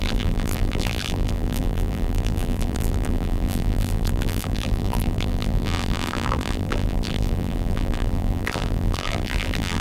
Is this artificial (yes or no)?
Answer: yes